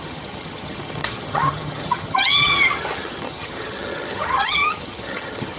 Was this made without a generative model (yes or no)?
no